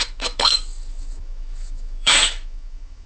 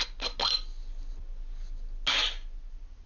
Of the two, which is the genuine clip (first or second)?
second